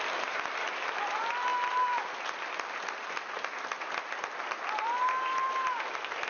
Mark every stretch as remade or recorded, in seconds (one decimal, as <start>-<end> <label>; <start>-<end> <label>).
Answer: 0.0-6.3 recorded